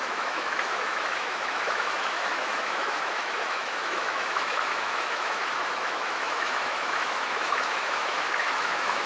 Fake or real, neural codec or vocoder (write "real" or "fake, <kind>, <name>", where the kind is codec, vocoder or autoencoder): fake, autoencoder, DAC-VAE